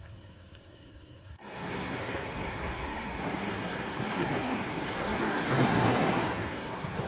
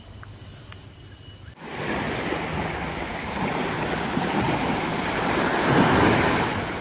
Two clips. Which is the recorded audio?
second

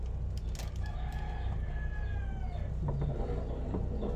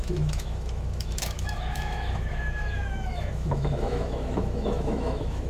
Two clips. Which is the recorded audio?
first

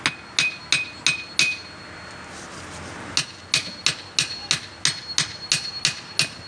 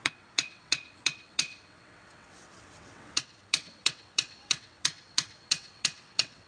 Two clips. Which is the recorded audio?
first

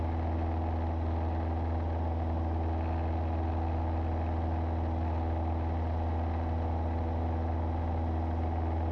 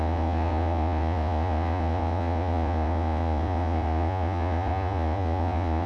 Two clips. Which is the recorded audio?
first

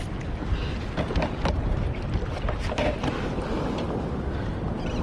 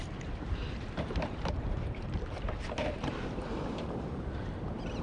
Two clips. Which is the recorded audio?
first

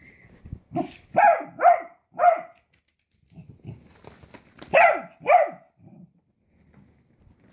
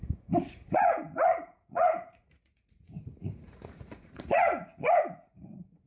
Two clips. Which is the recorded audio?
first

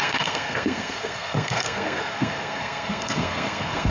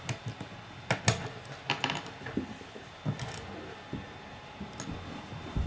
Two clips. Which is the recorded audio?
second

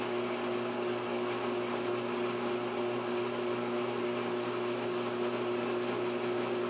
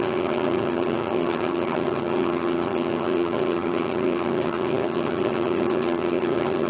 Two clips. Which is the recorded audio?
first